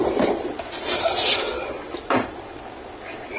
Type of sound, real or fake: real